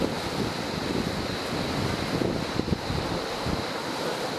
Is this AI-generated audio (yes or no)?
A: no